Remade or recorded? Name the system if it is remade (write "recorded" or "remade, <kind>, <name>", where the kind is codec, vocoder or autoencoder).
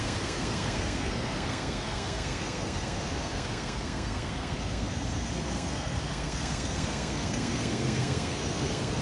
remade, codec, SNAC